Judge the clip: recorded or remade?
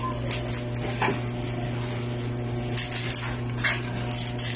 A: recorded